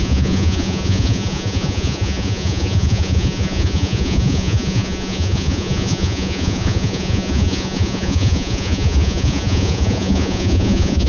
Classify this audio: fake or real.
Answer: fake